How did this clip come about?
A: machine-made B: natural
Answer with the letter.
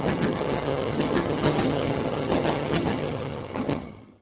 A